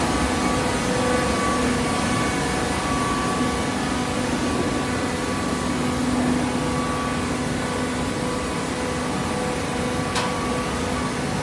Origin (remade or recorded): recorded